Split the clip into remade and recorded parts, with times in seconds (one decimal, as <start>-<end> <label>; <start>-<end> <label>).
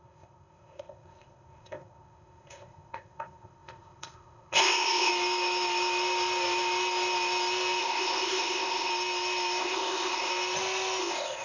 0.0-5.1 remade; 5.1-7.8 recorded; 7.8-8.9 remade; 8.9-9.6 recorded; 9.6-10.3 remade; 10.3-11.0 recorded; 11.0-11.4 remade